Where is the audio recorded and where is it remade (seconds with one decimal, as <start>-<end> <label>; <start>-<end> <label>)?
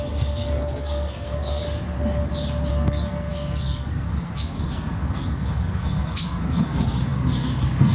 0.0-1.6 remade; 1.6-2.7 recorded; 2.7-7.9 remade